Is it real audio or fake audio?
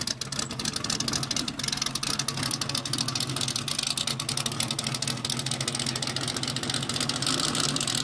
real